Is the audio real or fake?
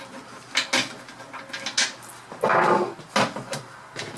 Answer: real